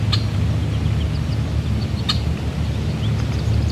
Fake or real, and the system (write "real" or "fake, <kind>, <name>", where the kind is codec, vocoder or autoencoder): real